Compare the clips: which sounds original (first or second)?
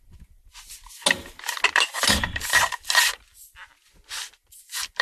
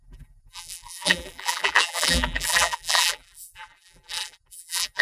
first